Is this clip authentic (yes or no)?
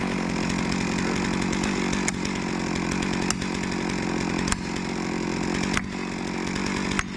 yes